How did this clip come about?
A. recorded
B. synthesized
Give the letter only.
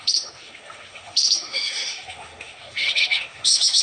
B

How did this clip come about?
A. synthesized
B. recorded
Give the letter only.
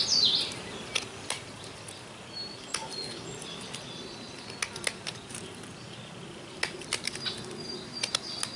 B